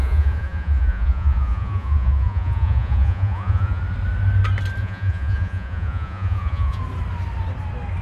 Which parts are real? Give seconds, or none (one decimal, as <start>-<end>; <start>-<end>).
3.8-4.8; 6.8-8.0